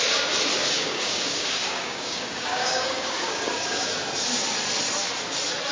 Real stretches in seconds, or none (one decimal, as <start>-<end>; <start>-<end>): 0.0-0.5; 3.9-5.7